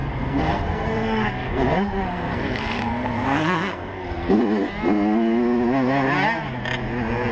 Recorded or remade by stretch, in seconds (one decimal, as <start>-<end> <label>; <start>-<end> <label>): 0.0-4.4 remade; 4.4-7.3 recorded